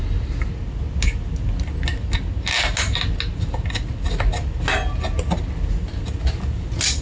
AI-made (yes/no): no